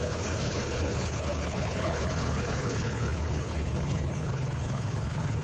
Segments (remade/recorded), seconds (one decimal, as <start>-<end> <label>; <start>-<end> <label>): 0.0-5.4 remade